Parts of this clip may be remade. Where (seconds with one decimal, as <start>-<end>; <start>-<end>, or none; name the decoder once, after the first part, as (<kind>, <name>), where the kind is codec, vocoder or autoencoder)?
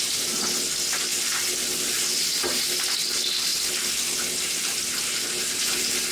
none